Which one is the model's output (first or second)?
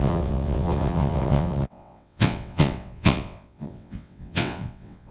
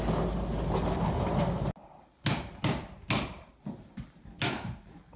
first